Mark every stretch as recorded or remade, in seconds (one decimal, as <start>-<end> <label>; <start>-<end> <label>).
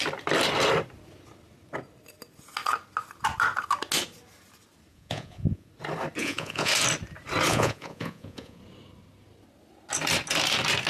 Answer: 0.0-4.9 recorded; 4.9-5.7 remade; 5.7-6.2 recorded; 6.2-6.7 remade; 6.7-7.5 recorded; 7.5-8.6 remade; 8.6-10.9 recorded